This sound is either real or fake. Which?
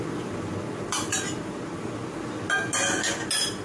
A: real